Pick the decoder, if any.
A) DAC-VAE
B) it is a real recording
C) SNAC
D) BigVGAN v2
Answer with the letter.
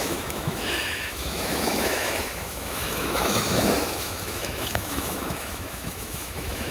A